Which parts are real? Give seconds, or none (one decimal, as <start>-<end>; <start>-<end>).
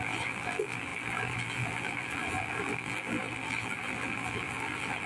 none